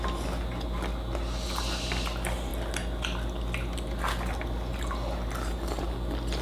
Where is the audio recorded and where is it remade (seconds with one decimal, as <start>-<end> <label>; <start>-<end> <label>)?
0.0-6.4 recorded